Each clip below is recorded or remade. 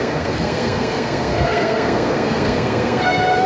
remade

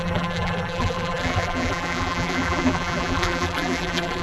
remade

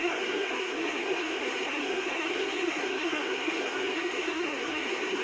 remade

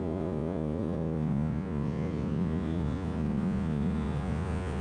remade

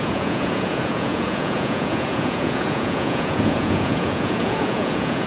remade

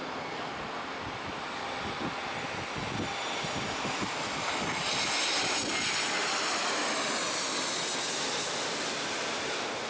recorded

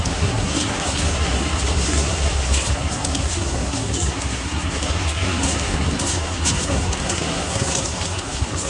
remade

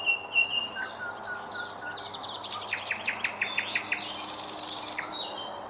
recorded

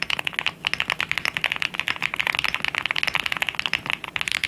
recorded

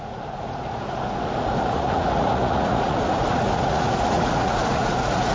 remade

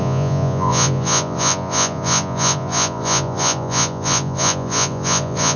remade